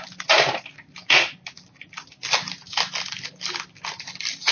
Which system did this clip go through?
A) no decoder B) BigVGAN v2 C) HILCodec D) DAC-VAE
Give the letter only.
A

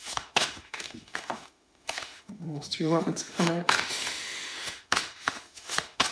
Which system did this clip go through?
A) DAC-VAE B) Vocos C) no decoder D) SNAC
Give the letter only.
A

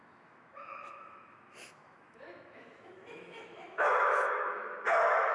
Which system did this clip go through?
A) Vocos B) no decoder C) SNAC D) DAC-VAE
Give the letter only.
D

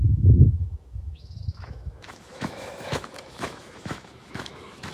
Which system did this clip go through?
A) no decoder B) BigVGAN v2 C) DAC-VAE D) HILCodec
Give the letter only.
C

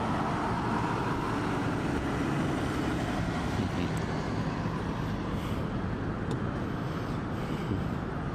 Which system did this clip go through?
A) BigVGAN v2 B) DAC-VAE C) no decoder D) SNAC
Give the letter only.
C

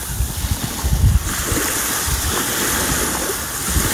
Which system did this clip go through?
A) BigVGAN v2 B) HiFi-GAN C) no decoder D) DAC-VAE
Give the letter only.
C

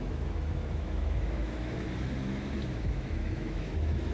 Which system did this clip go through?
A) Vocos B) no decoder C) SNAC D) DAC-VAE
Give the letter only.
D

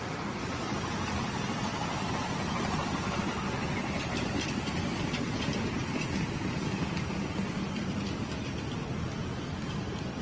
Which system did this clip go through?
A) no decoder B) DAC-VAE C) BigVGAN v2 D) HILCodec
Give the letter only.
A